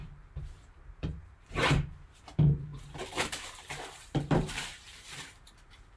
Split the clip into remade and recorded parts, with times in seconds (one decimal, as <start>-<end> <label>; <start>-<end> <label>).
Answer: 0.0-6.0 remade